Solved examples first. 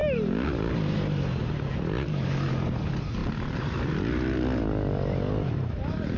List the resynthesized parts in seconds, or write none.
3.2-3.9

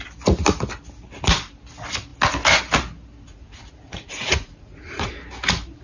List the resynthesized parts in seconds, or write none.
3.3-5.1